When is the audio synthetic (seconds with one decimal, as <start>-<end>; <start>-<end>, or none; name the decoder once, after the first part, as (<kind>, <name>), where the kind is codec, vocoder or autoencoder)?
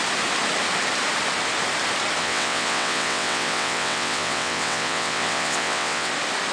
2.2-6.1 (vocoder, WaveNeXt)